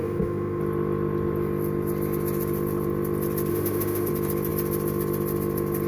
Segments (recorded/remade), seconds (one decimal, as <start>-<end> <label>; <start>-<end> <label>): 0.0-0.6 remade; 0.6-3.5 recorded; 3.5-4.1 remade; 4.1-5.9 recorded